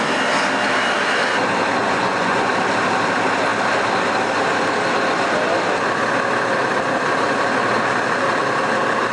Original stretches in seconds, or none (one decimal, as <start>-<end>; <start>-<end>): 0.0-1.8; 2.5-9.1